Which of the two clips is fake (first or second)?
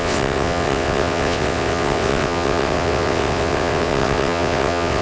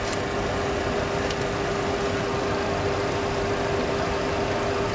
first